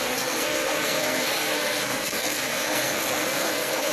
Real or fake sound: fake